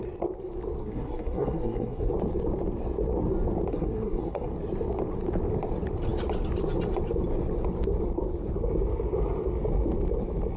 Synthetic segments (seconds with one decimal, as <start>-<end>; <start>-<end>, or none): 0.8-2.1; 3.7-4.5